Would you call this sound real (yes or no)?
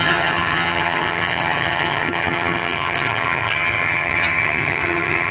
no